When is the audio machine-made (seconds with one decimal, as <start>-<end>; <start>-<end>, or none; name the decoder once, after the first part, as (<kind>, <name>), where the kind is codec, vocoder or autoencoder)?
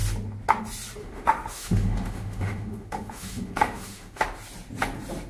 1.0-4.2 (autoencoder, DAC-VAE)